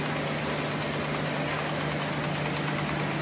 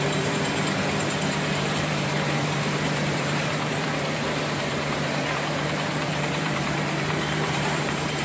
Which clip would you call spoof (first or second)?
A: second